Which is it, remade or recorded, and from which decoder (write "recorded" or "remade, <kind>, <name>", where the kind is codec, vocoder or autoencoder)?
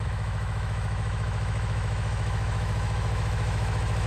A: remade, autoencoder, DAC-VAE